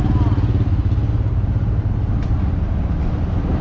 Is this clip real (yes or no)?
yes